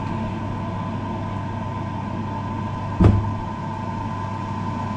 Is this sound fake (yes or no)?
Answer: no